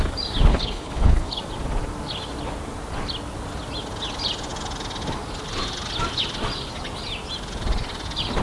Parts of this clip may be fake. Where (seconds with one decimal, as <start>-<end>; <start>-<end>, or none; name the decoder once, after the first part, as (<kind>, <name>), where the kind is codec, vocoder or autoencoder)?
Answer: 0.5-1.4 (codec, HILCodec)